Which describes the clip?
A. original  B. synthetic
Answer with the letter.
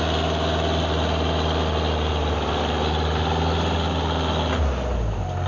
A